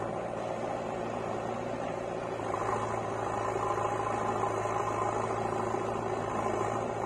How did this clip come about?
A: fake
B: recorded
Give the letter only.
B